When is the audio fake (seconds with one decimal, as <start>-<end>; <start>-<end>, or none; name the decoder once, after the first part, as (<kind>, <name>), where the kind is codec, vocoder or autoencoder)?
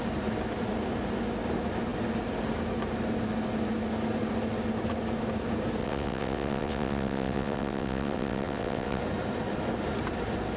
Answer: 5.8-9.0 (vocoder, WaveNeXt)